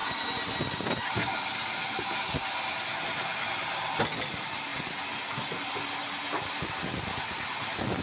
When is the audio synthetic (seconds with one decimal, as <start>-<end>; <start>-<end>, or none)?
none